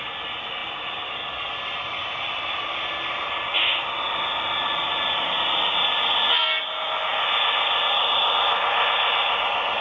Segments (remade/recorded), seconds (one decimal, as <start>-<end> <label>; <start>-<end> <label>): 0.0-9.8 recorded

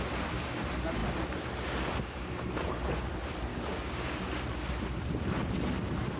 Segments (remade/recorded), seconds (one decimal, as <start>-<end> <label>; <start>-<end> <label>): 0.0-3.5 recorded; 3.5-4.2 remade; 4.2-6.2 recorded

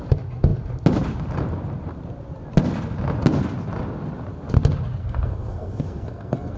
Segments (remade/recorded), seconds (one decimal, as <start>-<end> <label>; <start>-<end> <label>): 0.0-5.0 recorded; 5.0-6.6 remade

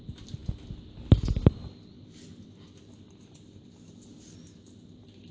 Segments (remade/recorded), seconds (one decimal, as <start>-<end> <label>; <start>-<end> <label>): 0.0-5.3 recorded

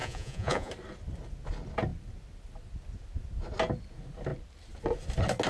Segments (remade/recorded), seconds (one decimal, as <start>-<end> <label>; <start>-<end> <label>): 0.0-0.7 remade; 0.7-5.5 recorded

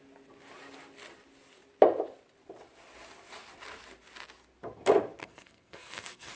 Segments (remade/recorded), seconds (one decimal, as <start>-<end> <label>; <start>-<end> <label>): 0.0-5.2 recorded; 5.2-6.4 remade

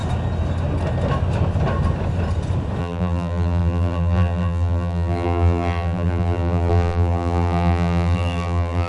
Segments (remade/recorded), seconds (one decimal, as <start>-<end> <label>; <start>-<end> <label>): 0.0-2.8 recorded; 2.8-8.9 remade